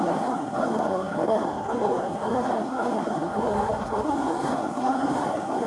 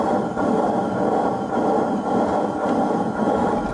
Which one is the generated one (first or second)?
first